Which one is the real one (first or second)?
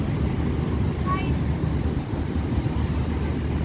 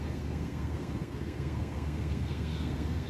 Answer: first